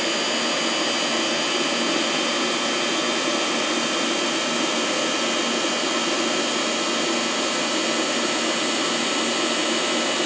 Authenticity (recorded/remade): recorded